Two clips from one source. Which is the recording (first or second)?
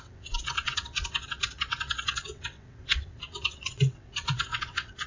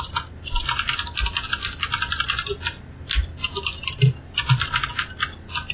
second